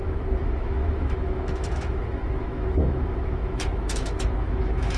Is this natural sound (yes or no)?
no